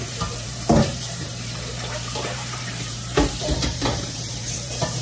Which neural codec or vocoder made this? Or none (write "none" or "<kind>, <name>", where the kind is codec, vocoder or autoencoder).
vocoder, BigVGAN v2